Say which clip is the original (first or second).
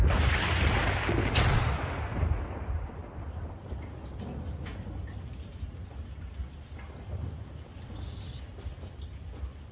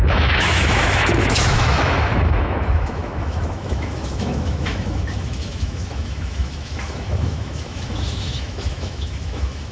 first